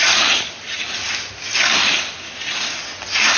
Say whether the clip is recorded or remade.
recorded